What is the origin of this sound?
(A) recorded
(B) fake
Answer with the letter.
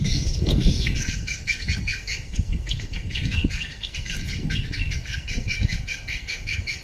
B